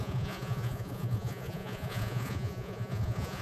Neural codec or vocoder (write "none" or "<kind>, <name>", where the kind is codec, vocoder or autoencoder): vocoder, Vocos